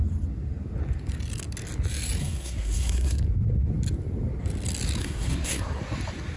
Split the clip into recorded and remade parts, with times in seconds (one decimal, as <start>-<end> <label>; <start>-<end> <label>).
0.0-2.2 recorded; 2.2-3.2 remade; 3.2-5.0 recorded; 5.0-5.8 remade; 5.8-6.4 recorded